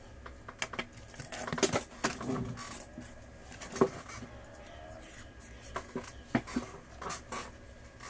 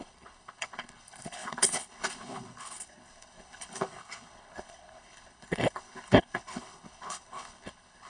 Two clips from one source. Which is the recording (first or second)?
first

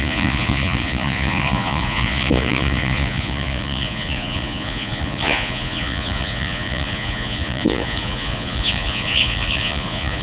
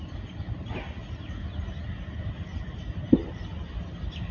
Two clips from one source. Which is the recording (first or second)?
second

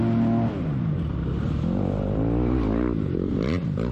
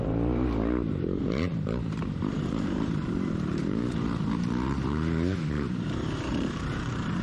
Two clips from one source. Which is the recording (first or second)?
first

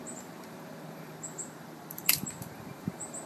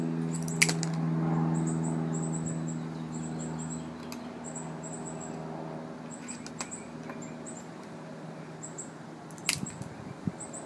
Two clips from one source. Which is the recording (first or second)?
second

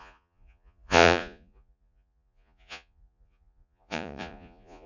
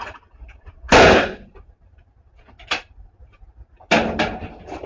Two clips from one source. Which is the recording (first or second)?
second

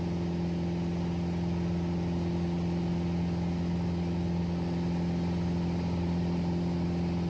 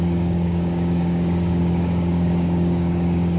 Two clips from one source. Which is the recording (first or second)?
first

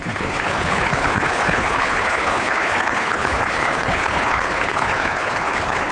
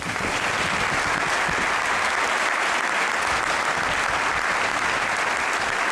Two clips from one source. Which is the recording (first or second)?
second